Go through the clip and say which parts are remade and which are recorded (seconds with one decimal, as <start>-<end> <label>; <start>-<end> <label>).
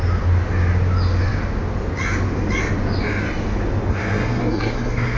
0.0-3.9 recorded; 3.9-5.2 remade